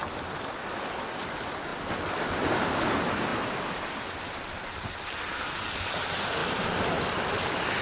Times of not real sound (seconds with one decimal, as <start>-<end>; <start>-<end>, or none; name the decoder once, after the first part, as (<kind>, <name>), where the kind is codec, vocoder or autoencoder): 6.4-7.0 (vocoder, BigVGAN v2)